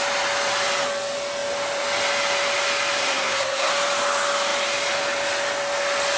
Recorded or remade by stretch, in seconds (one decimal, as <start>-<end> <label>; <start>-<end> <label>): 0.0-3.0 recorded; 3.0-3.7 remade; 3.7-6.2 recorded

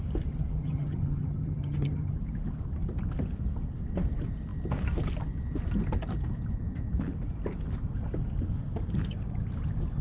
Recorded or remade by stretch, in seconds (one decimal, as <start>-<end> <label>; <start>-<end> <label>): 0.0-0.6 recorded; 0.6-2.1 remade; 2.1-10.0 recorded

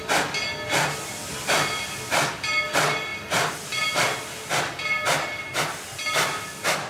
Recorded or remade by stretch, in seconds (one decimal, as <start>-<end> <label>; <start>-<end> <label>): 0.0-6.9 recorded

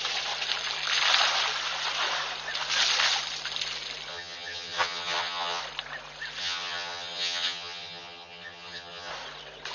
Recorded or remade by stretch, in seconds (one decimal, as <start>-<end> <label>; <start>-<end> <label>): 0.0-4.1 recorded; 4.1-5.6 remade; 5.6-6.4 recorded; 6.4-9.1 remade; 9.1-9.7 recorded